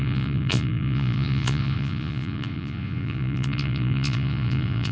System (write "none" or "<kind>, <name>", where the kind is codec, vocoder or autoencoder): vocoder, Vocos